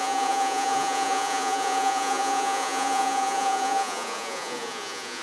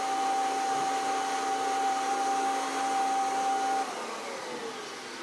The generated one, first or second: first